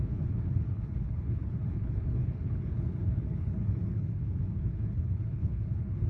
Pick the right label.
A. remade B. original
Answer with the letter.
A